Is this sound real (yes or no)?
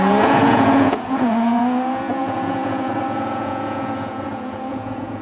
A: no